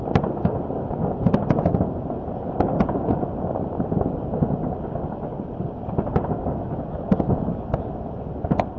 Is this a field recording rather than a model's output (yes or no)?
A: yes